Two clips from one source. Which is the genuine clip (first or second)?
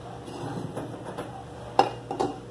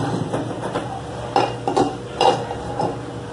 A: first